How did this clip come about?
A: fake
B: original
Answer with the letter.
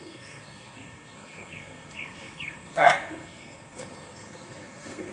A